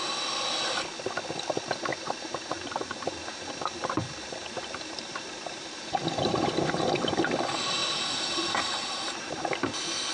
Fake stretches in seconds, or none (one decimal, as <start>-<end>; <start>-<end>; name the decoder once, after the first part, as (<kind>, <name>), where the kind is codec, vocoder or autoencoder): 1.9-6.8 (vocoder, BigVGAN v2); 7.8-9.4